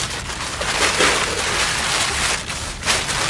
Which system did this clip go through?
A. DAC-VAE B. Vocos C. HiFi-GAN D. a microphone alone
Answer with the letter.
D